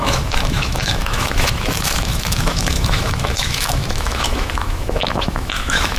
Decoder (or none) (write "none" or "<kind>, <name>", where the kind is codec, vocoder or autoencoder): autoencoder, DAC-VAE